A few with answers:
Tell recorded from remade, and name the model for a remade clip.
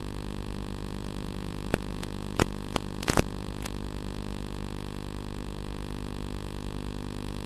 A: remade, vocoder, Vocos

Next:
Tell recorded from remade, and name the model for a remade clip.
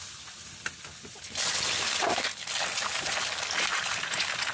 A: recorded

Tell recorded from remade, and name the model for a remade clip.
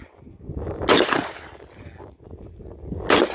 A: recorded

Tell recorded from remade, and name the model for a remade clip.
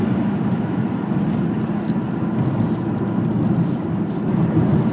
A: recorded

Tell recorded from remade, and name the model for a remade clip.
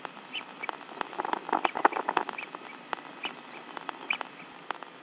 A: recorded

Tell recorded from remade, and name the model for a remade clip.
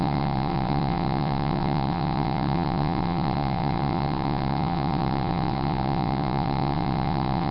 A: remade, vocoder, WaveNeXt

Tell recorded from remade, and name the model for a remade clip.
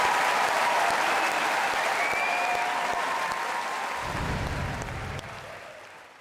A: remade, vocoder, BigVGAN v2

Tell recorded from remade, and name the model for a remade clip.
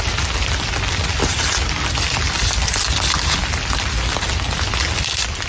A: recorded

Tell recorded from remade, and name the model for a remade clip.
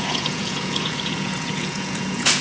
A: remade, vocoder, Vocos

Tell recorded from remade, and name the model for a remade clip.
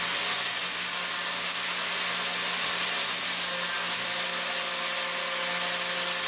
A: recorded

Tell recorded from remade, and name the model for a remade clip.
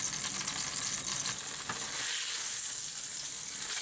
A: recorded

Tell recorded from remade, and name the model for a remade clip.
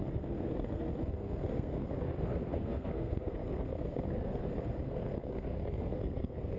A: remade, codec, SNAC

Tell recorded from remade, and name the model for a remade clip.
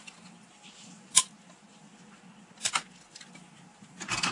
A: recorded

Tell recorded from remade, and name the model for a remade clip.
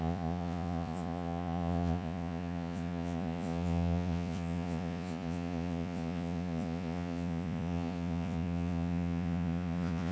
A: remade, vocoder, Vocos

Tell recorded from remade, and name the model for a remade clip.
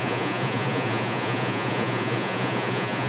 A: remade, vocoder, Vocos